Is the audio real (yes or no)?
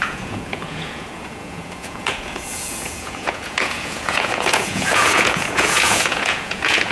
no